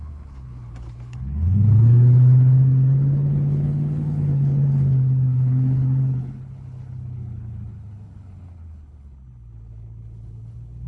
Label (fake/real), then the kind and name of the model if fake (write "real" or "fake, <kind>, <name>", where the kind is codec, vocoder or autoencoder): fake, codec, HILCodec